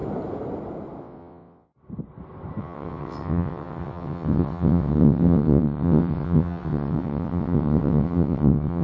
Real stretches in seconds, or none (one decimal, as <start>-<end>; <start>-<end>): 0.0-1.0; 1.7-2.6